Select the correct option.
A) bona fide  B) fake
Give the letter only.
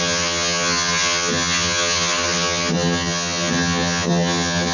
B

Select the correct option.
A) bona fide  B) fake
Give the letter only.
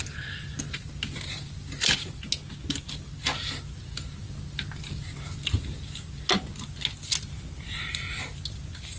A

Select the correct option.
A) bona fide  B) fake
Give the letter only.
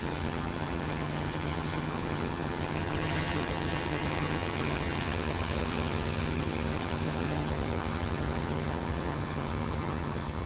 B